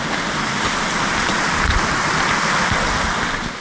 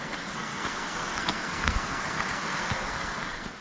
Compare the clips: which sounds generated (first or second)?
second